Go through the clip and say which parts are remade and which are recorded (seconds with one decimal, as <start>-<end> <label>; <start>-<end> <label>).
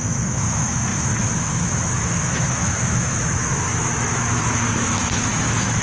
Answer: 0.0-5.8 remade